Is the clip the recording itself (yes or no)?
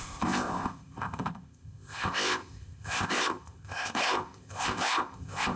no